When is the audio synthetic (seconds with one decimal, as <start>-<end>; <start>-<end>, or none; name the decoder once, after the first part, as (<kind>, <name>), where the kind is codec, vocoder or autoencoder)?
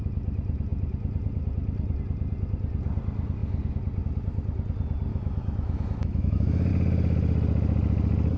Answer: 5.1-6.7 (autoencoder, DAC-VAE)